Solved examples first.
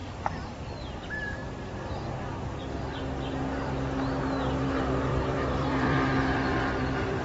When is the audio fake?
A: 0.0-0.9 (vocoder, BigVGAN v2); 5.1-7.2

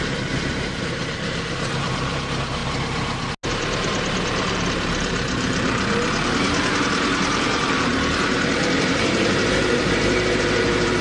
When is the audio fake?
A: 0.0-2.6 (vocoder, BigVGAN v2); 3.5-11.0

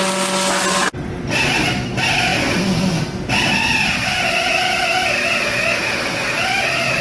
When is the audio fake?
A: none

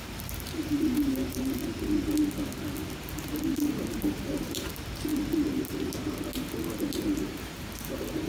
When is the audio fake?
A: 0.0-1.6 (vocoder, BigVGAN v2); 3.1-5.1; 7.2-8.3